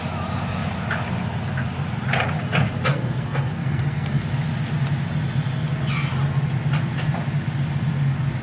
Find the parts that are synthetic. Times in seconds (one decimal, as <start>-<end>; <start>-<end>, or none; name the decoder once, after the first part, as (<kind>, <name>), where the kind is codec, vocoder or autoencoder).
2.9-4.2 (codec, SNAC)